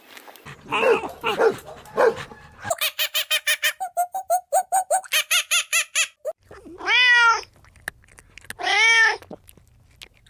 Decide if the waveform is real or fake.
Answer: real